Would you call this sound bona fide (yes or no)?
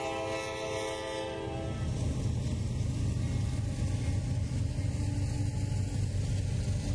yes